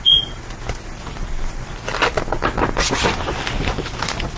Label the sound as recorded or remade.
recorded